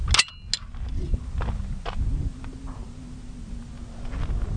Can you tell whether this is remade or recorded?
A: recorded